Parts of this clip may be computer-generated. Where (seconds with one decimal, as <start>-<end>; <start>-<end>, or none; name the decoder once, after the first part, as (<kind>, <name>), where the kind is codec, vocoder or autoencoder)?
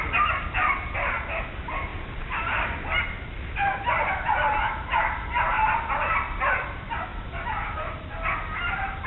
none